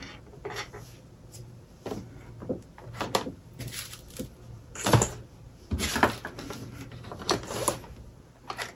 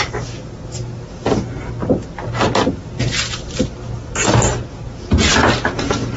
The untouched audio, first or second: second